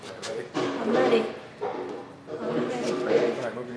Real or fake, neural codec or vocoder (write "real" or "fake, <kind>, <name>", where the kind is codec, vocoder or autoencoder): real